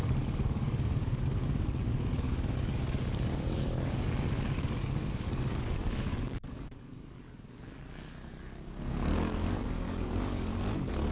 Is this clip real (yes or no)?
no